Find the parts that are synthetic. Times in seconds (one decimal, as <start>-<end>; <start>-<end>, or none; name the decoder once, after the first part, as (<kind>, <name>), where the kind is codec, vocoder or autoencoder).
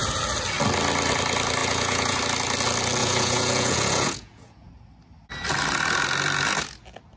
1.6-2.2 (vocoder, Vocos); 3.0-4.7